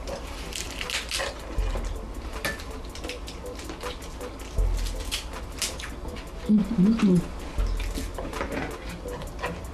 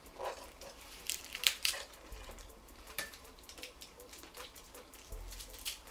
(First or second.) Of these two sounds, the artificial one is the second